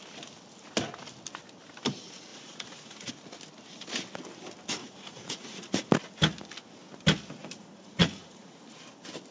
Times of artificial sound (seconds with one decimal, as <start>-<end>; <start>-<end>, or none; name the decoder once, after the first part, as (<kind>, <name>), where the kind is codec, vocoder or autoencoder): 2.3-3.1 (vocoder, Vocos); 4.8-5.9; 7.4-8.6